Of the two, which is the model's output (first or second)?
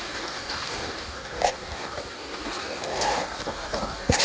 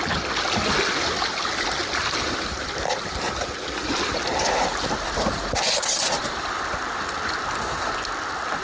first